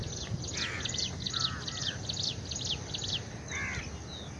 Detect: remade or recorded recorded